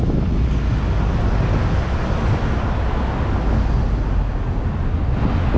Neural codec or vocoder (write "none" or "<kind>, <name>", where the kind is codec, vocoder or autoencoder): none